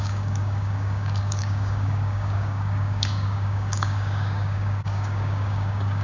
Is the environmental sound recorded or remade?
remade